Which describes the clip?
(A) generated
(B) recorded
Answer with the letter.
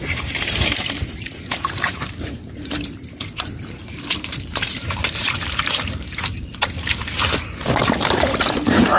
A